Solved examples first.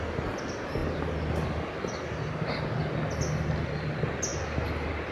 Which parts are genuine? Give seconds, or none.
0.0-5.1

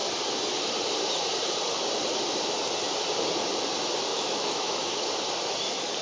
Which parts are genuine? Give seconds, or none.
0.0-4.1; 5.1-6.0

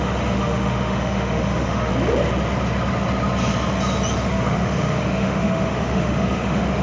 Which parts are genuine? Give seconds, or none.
1.9-4.3

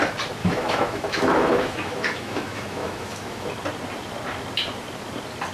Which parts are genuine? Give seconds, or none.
0.0-0.4; 3.5-5.5

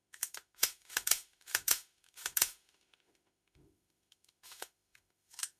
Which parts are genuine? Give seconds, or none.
none

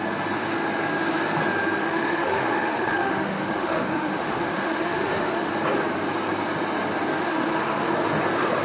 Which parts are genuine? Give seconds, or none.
0.0-1.8; 5.5-7.3; 7.9-8.6